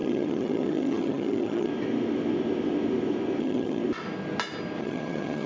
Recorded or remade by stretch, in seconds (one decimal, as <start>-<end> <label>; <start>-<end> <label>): 0.0-1.7 remade; 1.7-3.4 recorded; 3.4-3.8 remade; 3.8-4.8 recorded; 4.8-5.5 remade